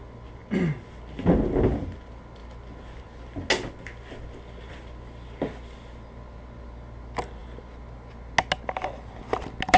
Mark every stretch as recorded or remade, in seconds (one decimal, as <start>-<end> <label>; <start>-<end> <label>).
0.0-9.8 recorded